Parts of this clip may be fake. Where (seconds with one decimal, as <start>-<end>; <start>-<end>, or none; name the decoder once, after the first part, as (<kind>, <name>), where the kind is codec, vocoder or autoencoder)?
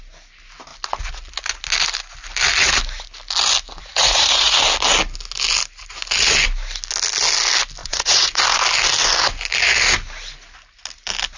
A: 3.8-4.6 (vocoder, Vocos); 7.8-8.4